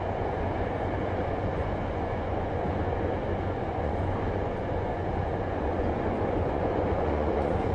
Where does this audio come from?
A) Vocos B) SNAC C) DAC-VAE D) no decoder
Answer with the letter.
A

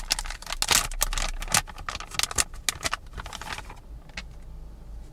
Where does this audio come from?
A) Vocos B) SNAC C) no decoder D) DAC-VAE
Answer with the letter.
C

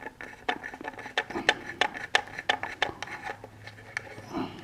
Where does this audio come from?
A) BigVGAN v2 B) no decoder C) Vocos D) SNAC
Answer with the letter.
B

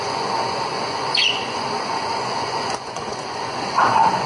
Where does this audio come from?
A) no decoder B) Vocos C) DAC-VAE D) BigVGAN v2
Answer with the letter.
B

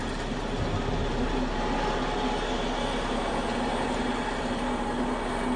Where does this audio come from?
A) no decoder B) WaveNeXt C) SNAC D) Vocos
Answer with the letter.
A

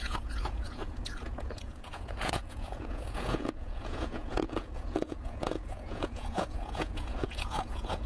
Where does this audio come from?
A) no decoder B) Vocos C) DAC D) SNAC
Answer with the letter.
B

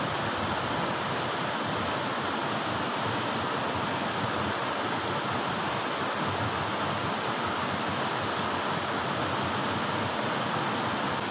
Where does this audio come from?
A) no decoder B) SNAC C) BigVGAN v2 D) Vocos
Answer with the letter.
A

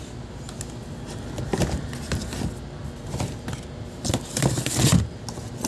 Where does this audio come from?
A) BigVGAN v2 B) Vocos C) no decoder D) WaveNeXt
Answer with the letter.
C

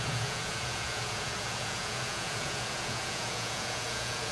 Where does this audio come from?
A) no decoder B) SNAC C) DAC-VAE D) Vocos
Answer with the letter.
D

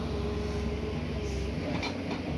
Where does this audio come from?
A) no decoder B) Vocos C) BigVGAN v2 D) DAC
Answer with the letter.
A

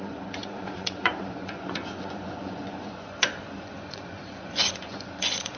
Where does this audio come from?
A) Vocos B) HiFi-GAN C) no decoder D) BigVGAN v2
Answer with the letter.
A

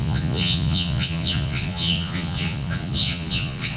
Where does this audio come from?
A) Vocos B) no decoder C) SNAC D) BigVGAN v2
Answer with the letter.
A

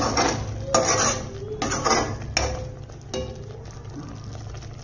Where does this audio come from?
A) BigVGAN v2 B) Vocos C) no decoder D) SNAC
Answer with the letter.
C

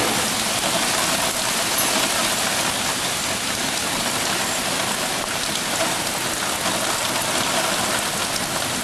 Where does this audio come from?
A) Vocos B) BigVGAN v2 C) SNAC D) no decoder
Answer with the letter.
D